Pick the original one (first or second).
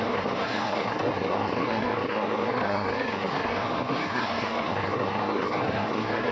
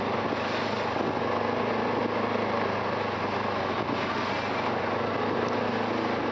second